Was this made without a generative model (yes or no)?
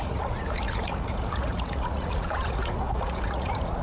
no